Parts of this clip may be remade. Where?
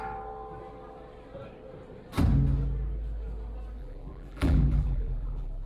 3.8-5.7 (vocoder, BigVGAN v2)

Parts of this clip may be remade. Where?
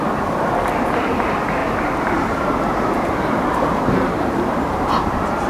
1.6-4.9 (vocoder, BigVGAN v2)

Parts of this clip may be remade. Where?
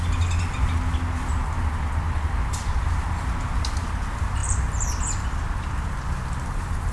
4.4-5.0 (vocoder, BigVGAN v2)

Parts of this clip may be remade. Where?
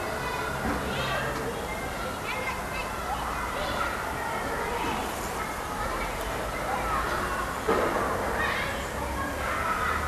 none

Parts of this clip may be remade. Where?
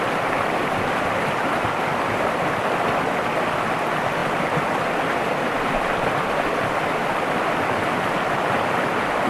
4.2-4.8 (vocoder, BigVGAN v2)